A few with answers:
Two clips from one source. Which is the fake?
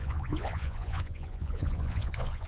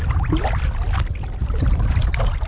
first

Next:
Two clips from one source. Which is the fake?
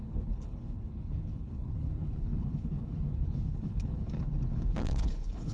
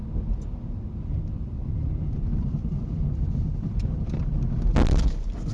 first